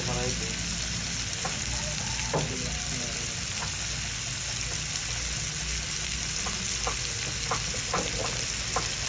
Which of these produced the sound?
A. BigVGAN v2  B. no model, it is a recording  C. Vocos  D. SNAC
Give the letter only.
B